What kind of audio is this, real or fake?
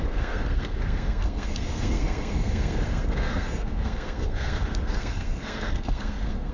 fake